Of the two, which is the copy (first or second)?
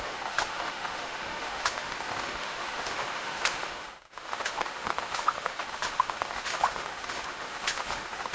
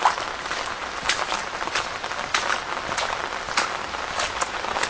first